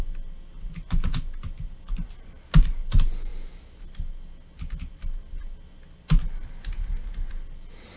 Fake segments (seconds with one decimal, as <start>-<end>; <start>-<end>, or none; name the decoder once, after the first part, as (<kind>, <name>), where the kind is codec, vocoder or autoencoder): none